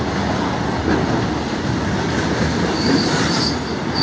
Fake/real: real